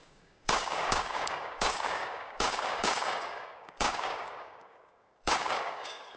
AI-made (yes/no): yes